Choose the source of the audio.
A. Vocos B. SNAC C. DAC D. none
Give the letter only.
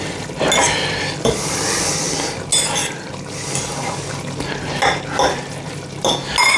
D